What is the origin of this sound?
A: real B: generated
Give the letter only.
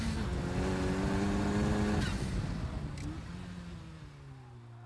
A